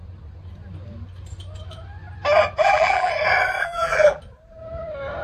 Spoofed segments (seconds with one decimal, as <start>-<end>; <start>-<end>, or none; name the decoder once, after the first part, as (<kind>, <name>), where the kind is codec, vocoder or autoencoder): 2.6-3.1 (vocoder, BigVGAN v2); 3.6-4.2